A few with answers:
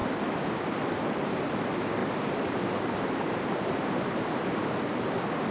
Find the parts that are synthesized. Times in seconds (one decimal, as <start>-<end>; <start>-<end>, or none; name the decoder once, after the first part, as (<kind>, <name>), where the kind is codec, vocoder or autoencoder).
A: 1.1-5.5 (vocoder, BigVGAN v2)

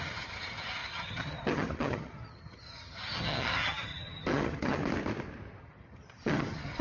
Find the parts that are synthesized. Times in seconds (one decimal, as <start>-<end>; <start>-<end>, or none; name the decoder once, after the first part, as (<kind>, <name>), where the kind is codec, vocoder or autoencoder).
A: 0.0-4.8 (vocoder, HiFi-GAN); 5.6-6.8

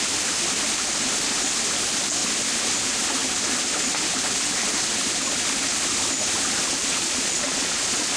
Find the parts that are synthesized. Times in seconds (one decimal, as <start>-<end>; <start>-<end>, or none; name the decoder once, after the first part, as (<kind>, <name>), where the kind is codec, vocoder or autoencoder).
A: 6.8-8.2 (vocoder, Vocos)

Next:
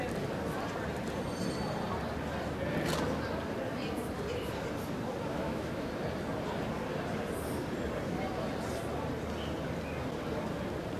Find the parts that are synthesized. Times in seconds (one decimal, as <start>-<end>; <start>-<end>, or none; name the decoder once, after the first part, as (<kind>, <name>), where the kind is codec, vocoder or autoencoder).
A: 5.3-5.9 (autoencoder, DAC-VAE)

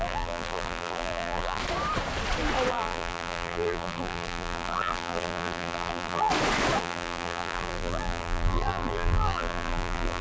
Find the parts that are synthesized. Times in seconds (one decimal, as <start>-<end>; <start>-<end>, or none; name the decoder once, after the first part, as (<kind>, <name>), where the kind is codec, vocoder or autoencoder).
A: 0.0-1.6 (vocoder, BigVGAN v2); 2.7-6.3; 6.8-10.2